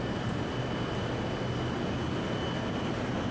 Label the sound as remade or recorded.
recorded